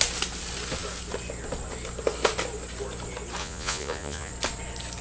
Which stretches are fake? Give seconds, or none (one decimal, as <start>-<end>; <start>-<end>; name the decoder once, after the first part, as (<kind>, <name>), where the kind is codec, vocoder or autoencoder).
3.4-4.3 (vocoder, Vocos)